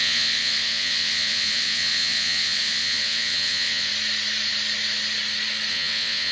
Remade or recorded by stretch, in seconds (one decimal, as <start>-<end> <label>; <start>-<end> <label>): 0.0-3.9 remade; 3.9-5.7 recorded; 5.7-6.3 remade